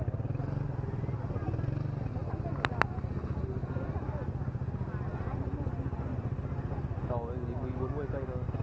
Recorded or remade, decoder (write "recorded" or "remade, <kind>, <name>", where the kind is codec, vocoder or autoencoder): recorded